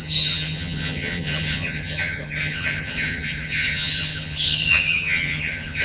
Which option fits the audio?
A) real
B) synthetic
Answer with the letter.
B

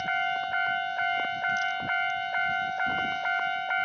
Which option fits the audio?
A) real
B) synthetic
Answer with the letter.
A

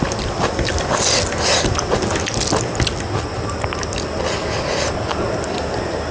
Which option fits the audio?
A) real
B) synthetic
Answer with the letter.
A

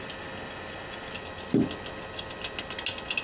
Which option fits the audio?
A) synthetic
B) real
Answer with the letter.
B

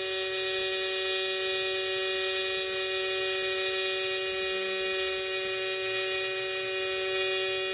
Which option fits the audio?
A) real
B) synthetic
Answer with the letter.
A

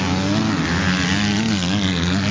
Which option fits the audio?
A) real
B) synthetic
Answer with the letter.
A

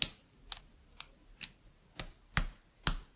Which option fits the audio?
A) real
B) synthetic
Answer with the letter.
A